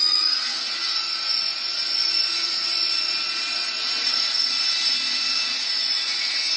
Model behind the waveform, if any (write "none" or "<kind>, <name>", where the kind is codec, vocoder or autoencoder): vocoder, Vocos